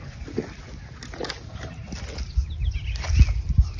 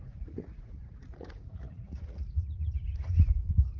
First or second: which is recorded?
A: first